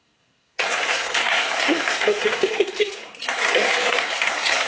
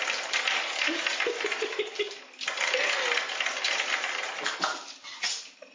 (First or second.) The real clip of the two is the second